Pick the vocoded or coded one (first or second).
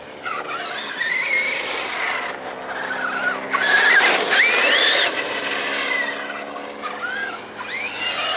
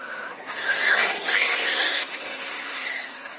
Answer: second